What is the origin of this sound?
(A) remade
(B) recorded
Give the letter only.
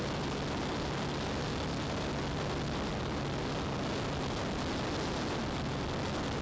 B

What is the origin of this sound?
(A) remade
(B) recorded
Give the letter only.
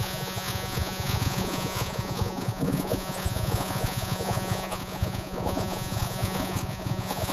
A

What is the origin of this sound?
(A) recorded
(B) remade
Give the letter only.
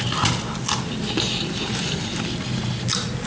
A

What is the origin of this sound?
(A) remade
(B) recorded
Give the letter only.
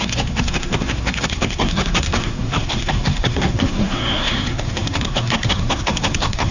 A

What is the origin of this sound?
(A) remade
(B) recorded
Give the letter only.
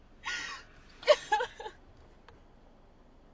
B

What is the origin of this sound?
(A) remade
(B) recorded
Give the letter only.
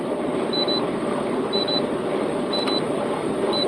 A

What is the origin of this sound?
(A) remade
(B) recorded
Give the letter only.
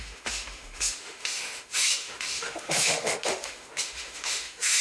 A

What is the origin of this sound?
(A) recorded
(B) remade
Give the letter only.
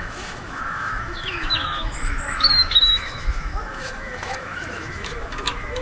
B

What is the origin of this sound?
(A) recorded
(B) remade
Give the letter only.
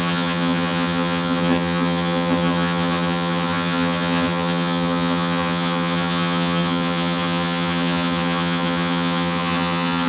B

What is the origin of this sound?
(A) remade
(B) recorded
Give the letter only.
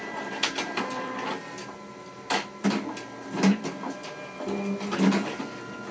B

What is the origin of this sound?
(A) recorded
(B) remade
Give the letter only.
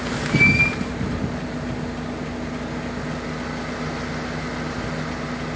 A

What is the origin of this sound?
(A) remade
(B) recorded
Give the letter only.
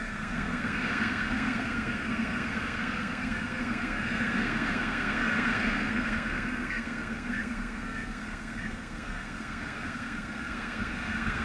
A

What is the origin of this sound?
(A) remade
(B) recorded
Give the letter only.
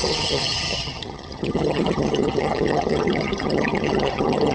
A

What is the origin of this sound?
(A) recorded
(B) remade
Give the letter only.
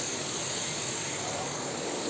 B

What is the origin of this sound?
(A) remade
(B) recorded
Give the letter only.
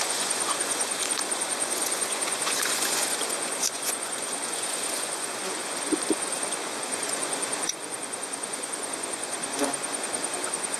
A